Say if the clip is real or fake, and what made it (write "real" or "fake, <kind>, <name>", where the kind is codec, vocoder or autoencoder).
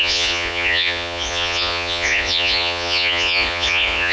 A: fake, vocoder, Vocos